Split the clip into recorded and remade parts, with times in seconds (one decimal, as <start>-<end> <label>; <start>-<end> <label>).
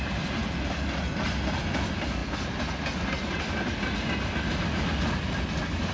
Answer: 0.0-5.9 recorded